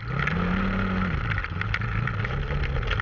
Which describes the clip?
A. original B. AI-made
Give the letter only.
A